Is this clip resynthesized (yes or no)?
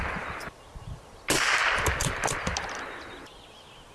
no